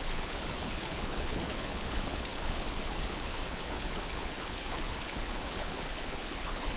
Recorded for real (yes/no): no